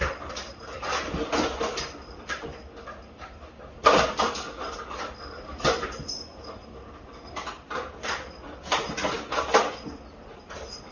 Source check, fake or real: fake